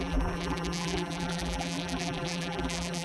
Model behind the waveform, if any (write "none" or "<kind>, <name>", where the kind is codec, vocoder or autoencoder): vocoder, BigVGAN v2